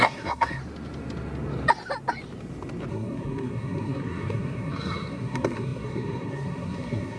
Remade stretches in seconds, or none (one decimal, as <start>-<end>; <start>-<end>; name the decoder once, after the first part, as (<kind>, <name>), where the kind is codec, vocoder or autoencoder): 0.0-0.6 (codec, SNAC); 2.9-7.2